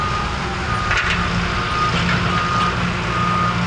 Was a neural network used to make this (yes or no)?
no